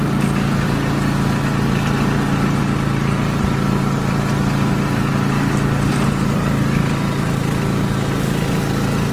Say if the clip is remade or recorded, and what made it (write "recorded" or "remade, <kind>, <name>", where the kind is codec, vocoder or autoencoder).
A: recorded